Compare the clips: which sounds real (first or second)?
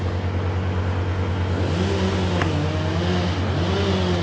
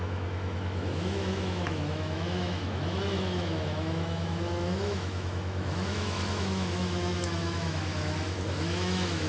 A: first